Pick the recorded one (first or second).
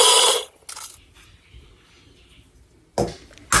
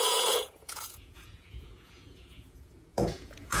first